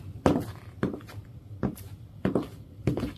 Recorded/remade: recorded